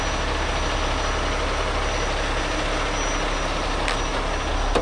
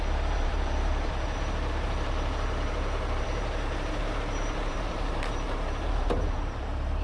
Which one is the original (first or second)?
first